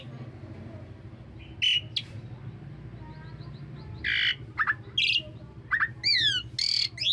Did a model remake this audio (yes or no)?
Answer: no